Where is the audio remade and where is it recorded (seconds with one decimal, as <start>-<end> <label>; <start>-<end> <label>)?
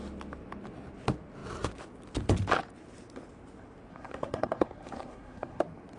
0.0-3.9 recorded; 3.9-5.6 remade; 5.6-6.0 recorded